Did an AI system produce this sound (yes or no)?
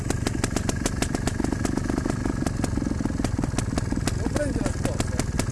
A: no